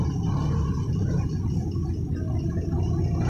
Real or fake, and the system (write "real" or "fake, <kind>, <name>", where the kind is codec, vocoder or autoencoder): real